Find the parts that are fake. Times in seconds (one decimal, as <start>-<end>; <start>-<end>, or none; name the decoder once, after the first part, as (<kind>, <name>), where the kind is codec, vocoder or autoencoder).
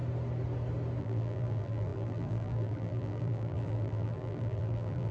1.0-5.1 (vocoder, BigVGAN v2)